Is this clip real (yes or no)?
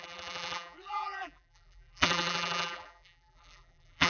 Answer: no